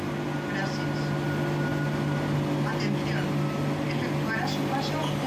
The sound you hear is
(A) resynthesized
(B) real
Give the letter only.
B